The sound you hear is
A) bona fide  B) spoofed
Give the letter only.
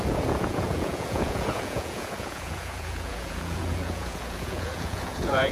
B